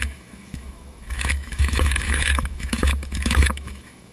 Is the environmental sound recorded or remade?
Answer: remade